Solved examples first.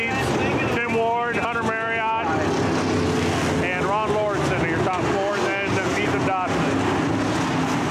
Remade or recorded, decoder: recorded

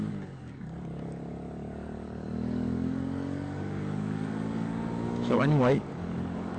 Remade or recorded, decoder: remade, codec, DAC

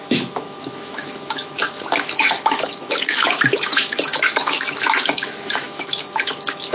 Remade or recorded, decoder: remade, autoencoder, DAC-VAE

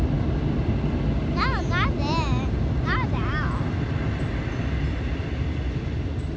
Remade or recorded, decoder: recorded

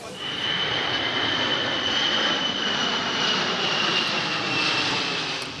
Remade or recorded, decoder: remade, vocoder, BigVGAN v2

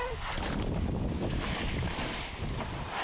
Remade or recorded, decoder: recorded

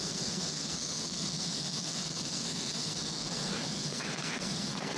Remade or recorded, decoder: remade, codec, SNAC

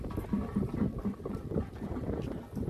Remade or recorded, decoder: recorded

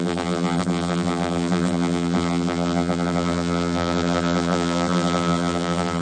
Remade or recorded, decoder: remade, vocoder, BigVGAN v2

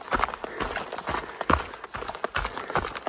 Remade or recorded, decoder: recorded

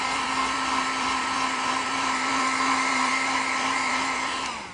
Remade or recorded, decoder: remade, vocoder, BigVGAN v2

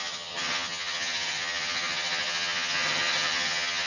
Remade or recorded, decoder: remade, vocoder, HiFi-GAN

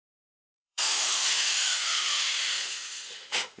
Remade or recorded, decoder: remade, autoencoder, DAC-VAE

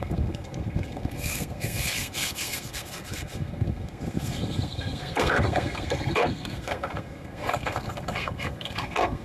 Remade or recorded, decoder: remade, codec, SNAC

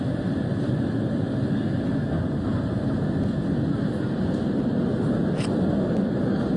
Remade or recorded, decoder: recorded